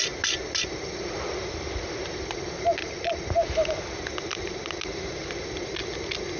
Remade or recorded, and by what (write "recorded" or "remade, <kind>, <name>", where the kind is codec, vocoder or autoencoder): recorded